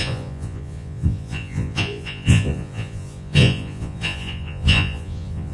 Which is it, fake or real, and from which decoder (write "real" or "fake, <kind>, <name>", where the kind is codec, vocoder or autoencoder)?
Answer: fake, vocoder, Vocos